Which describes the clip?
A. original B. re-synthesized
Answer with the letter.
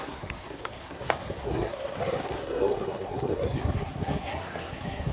B